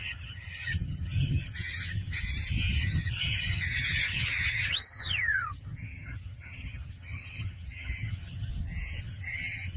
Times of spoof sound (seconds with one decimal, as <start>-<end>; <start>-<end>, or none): 0.0-2.2; 2.8-8.5; 9.0-9.8